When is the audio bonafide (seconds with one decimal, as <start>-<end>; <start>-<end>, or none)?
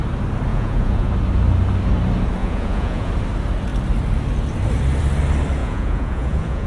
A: 0.0-0.5; 1.1-2.4; 3.1-5.6